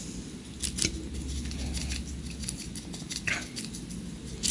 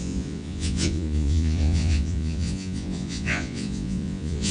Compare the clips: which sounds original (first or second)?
first